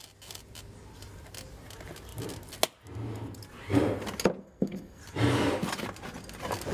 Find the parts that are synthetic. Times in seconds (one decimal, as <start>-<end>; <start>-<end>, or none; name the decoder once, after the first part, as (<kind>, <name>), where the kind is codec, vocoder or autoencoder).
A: 4.4-5.0 (codec, SNAC)